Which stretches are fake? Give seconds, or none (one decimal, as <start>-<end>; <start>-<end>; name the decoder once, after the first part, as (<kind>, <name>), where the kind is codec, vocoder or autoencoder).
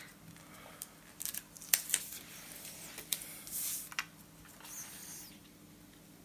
none